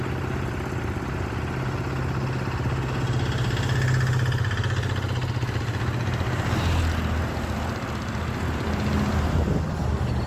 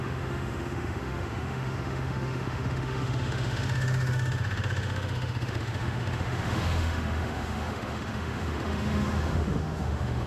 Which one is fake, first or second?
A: second